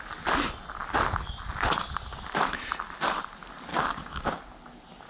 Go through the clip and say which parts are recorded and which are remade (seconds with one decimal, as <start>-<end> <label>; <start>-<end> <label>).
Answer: 0.0-3.7 recorded; 3.7-4.4 remade; 4.4-5.1 recorded